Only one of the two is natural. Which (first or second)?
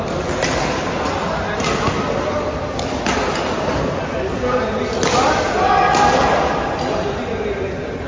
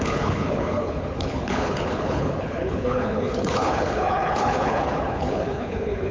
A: first